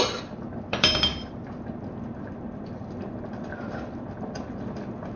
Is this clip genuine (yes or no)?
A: no